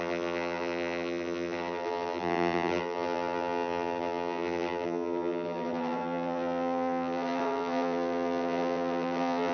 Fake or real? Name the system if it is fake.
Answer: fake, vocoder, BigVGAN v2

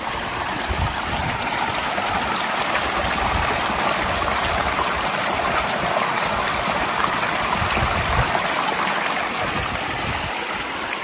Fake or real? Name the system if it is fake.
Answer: real